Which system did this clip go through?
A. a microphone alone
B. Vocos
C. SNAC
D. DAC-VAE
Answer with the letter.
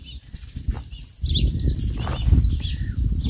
A